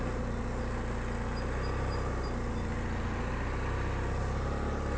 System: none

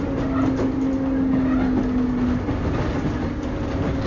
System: none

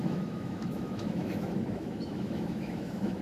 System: autoencoder, DAC-VAE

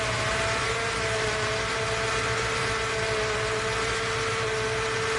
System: none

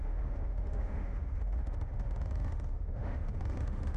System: autoencoder, DAC-VAE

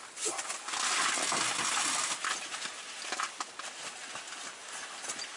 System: none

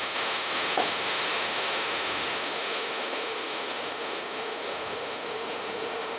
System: autoencoder, DAC-VAE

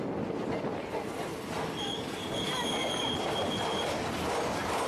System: none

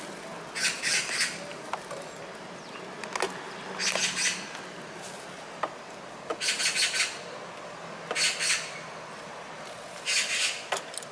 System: none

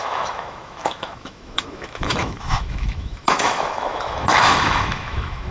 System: autoencoder, DAC-VAE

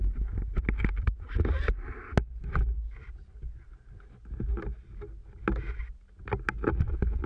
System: none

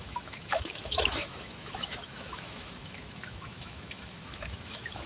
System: autoencoder, DAC-VAE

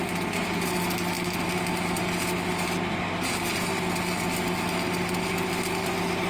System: none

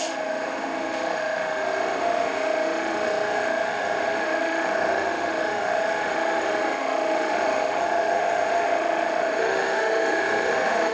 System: autoencoder, DAC-VAE